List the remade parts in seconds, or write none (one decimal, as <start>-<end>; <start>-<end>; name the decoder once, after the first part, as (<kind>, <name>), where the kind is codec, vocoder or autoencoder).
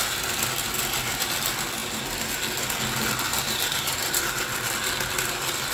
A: 3.3-4.2 (vocoder, BigVGAN v2)